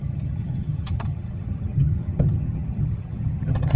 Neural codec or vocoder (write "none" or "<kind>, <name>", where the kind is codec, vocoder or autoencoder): vocoder, HiFi-GAN